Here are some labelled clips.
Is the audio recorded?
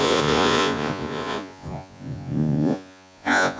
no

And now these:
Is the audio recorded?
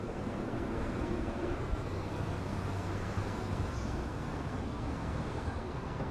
no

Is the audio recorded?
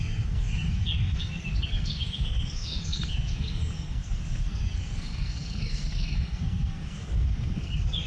no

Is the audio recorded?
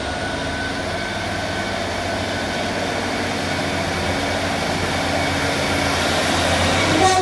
yes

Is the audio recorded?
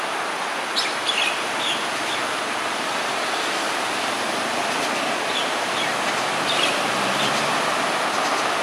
no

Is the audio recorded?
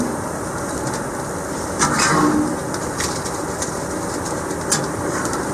yes